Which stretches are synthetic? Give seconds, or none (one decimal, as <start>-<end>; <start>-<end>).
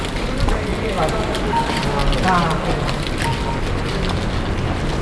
0.0-0.7; 1.2-2.0